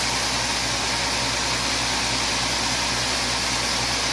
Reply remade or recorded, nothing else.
recorded